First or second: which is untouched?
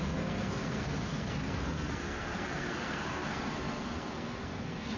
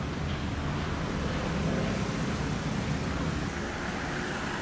second